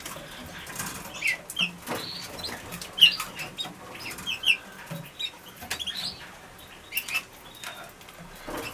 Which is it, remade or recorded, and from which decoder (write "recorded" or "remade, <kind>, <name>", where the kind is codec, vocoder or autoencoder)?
recorded